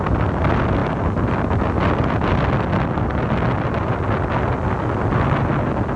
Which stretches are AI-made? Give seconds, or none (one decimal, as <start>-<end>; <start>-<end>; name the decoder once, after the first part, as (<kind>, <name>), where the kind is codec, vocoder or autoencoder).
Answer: none